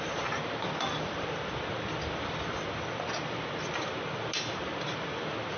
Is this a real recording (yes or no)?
yes